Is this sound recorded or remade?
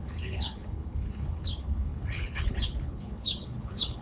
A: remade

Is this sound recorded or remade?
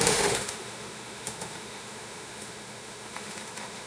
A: remade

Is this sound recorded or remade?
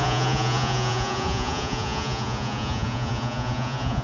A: remade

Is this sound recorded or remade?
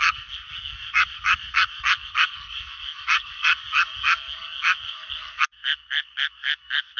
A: remade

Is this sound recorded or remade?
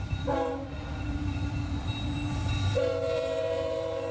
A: remade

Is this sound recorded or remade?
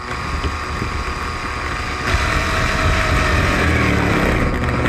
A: recorded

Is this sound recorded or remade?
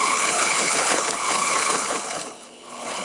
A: remade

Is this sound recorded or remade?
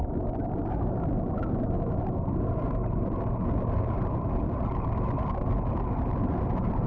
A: recorded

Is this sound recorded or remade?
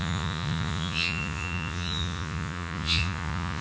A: remade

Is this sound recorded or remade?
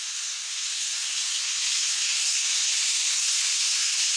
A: remade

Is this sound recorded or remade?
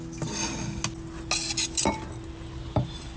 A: recorded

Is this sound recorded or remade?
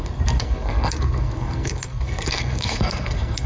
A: remade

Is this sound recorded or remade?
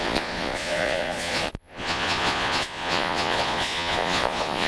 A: remade